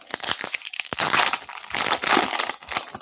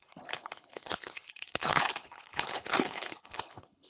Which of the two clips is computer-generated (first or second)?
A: second